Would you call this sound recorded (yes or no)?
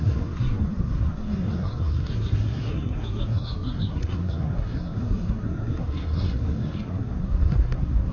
no